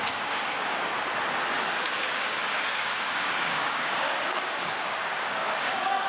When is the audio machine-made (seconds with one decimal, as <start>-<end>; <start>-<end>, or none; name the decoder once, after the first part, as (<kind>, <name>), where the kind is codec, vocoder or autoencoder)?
0.0-0.9 (codec, DAC); 1.6-6.1